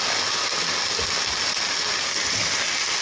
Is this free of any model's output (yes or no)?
yes